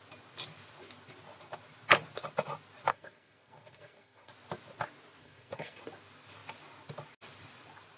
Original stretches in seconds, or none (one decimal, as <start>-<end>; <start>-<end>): 0.0-2.9; 4.3-5.2; 5.8-8.0